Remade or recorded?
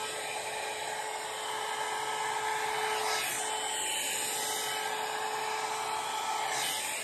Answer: recorded